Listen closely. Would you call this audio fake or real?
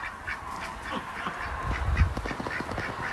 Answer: real